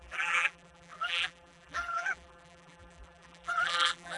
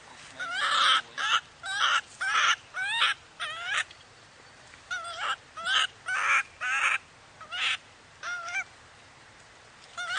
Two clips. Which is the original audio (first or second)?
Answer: second